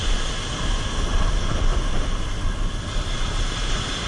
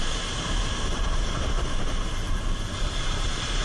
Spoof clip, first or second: second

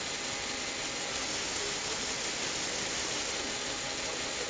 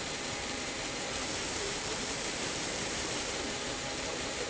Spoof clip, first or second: second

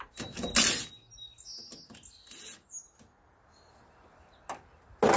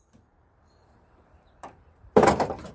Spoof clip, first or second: second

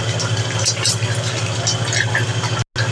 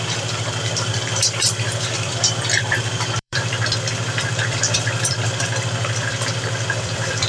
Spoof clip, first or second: second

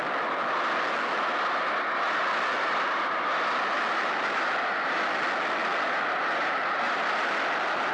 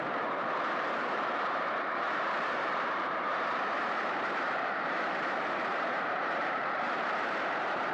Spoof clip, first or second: second